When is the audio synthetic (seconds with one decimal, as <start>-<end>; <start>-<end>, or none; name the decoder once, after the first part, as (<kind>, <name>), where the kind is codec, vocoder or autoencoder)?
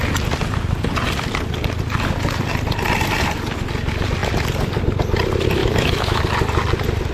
5.6-6.2 (autoencoder, DAC-VAE)